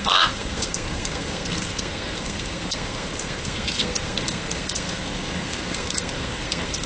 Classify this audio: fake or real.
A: fake